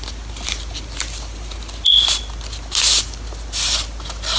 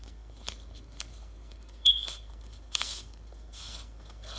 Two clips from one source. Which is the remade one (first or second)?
second